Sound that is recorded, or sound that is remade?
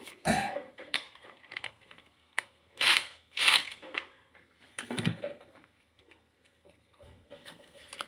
remade